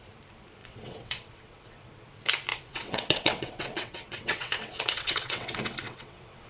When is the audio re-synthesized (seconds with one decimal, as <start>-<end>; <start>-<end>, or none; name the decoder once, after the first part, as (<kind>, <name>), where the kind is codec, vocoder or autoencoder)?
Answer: 0.6-1.9 (vocoder, WaveNeXt); 2.5-6.5